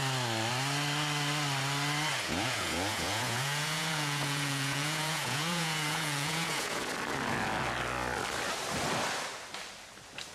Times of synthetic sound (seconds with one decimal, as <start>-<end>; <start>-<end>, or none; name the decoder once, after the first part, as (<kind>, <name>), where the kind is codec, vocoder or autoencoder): 2.1-6.9 (vocoder, Vocos)